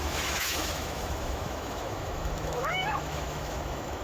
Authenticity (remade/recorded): remade